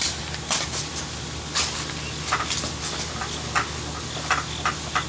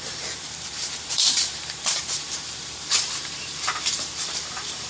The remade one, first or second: second